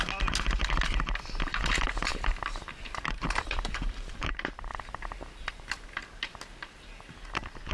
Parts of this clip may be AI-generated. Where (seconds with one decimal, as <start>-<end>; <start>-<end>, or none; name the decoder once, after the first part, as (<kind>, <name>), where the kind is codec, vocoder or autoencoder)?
2.1-5.7 (vocoder, BigVGAN v2)